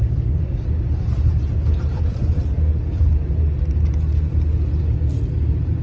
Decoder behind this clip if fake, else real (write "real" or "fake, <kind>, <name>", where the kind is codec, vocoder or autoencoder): real